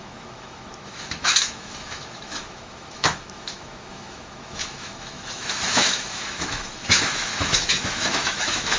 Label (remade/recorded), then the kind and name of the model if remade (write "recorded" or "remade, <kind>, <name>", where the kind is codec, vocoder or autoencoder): remade, autoencoder, DAC-VAE